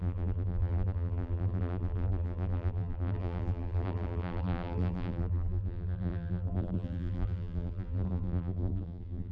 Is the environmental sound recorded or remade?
remade